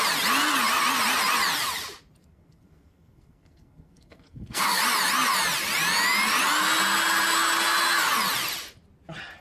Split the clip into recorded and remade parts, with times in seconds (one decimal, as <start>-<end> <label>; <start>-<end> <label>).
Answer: 0.0-2.2 recorded; 2.2-4.8 remade; 4.8-9.4 recorded

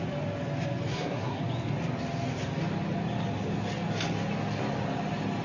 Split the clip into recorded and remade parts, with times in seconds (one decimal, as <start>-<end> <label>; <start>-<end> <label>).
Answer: 0.0-0.9 recorded; 0.9-1.4 remade; 1.4-5.4 recorded

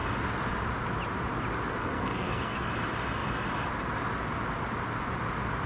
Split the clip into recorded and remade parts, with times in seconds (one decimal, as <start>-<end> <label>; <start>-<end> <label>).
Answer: 0.0-1.8 recorded; 1.8-2.7 remade; 2.7-5.7 recorded

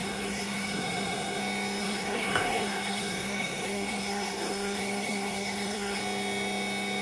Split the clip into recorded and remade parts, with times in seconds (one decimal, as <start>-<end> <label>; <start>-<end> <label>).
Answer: 0.0-1.4 remade; 1.4-1.8 recorded; 1.8-6.0 remade; 6.0-7.0 recorded

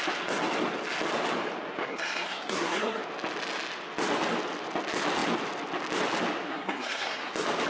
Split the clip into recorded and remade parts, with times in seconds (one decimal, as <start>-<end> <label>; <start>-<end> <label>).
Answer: 0.0-1.8 recorded; 1.8-3.0 remade; 3.0-6.5 recorded; 6.5-7.3 remade; 7.3-7.7 recorded

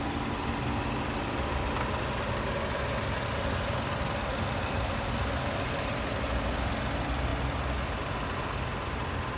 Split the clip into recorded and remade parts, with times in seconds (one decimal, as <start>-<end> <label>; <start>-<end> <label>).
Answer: 0.0-9.4 recorded

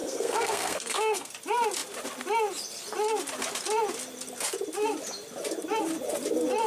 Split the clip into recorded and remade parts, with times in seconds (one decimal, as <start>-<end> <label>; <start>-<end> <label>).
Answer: 0.0-1.3 remade; 1.3-6.7 recorded

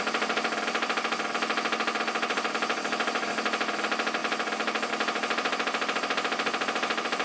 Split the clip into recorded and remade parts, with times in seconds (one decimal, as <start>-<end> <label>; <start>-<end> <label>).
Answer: 0.0-7.2 recorded